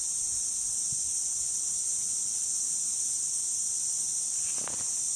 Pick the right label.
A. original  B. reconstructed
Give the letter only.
A